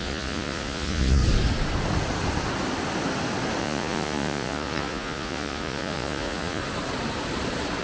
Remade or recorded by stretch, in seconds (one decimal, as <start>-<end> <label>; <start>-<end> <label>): 0.0-1.2 remade; 1.2-3.6 recorded; 3.6-6.6 remade; 6.6-7.8 recorded